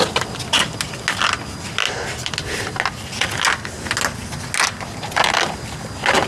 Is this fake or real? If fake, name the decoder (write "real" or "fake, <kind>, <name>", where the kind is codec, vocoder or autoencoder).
real